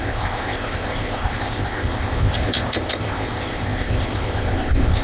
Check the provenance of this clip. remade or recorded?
remade